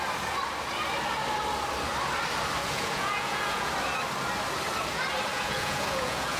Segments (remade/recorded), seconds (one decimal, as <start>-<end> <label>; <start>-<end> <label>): 0.0-2.6 recorded; 2.6-3.7 remade; 3.7-5.3 recorded; 5.3-6.4 remade